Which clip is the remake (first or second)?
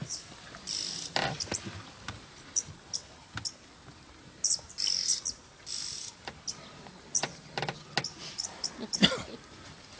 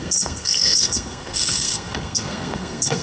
second